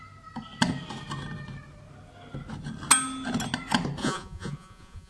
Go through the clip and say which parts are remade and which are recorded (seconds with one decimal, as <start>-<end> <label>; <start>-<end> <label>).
0.0-4.0 recorded; 4.0-5.1 remade